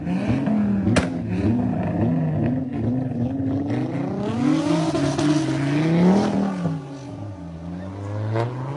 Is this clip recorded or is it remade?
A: recorded